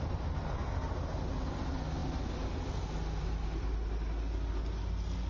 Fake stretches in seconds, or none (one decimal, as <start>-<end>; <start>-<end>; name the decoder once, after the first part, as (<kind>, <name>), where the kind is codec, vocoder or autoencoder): none